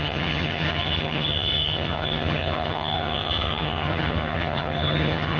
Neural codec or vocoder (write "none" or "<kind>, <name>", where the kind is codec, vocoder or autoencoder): vocoder, HiFi-GAN